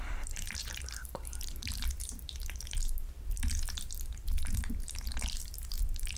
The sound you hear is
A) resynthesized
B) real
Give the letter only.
A